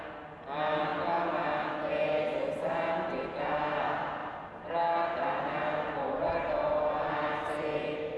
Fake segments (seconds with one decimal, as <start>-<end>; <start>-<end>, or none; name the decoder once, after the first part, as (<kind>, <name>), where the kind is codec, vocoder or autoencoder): none